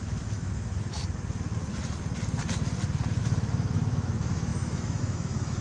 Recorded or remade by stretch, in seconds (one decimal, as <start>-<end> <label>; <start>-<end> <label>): 0.0-1.0 remade; 1.0-3.2 recorded; 3.2-5.6 remade